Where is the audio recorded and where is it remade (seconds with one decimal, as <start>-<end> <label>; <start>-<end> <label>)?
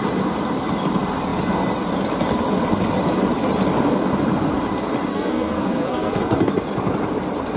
0.0-5.1 recorded; 5.1-6.6 remade; 6.6-7.6 recorded